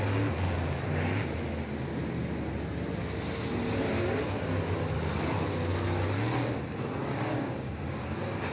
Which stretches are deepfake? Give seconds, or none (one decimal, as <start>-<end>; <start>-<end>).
7.0-8.5